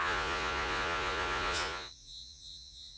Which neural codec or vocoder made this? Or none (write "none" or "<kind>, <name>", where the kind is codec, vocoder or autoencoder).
vocoder, Vocos